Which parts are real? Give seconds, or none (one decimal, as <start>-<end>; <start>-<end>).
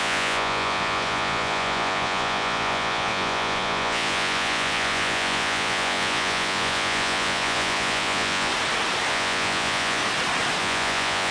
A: 8.5-9.1; 10.0-10.6